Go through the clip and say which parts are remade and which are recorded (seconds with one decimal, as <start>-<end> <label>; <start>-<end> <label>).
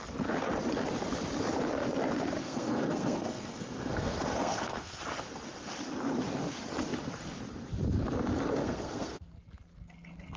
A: 0.0-2.4 recorded; 2.4-5.0 remade; 5.0-8.6 recorded; 8.6-9.3 remade; 9.3-10.4 recorded